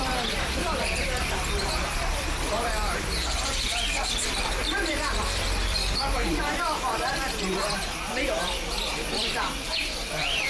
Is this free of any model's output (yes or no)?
no